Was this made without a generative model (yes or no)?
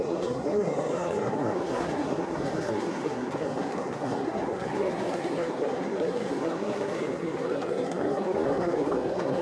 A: no